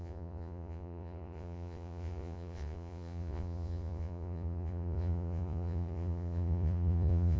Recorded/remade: remade